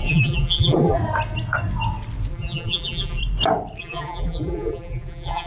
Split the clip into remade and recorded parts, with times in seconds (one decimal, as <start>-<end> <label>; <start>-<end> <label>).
0.0-1.0 remade; 1.0-2.3 recorded; 2.3-3.2 remade; 3.2-3.8 recorded; 3.8-5.5 remade